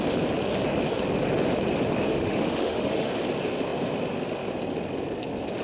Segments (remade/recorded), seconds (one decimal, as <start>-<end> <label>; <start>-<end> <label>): 0.0-2.1 recorded; 2.1-3.1 remade; 3.1-5.6 recorded